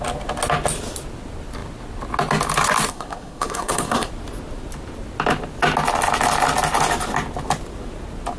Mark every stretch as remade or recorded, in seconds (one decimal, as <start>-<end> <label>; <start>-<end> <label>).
0.0-2.9 recorded; 2.9-4.1 remade; 4.1-8.4 recorded